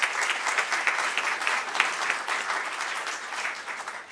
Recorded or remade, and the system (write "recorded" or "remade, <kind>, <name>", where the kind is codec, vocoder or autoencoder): recorded